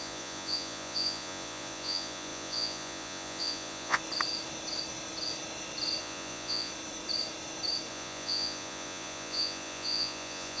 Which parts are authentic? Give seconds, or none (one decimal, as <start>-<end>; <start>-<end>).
4.0-6.0; 6.7-7.9